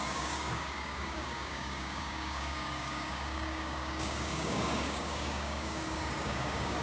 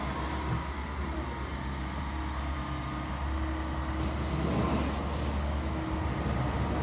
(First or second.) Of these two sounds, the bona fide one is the second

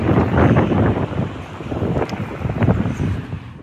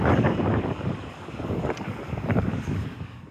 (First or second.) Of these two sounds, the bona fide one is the first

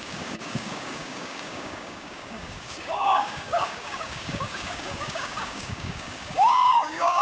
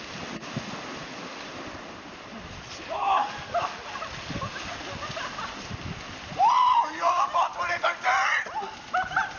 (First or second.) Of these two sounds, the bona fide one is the second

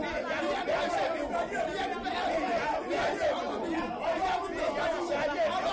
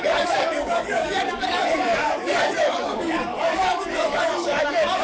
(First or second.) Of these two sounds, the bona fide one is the first